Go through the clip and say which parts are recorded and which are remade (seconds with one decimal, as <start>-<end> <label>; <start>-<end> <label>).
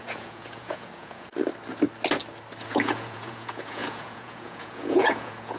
0.0-1.3 remade; 1.3-2.6 recorded; 2.6-5.6 remade